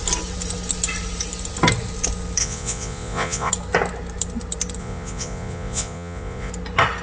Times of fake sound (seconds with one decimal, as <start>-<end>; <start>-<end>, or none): 2.4-3.5; 4.8-6.5